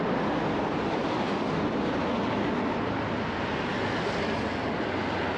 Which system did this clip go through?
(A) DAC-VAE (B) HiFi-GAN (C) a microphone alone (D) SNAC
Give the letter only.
C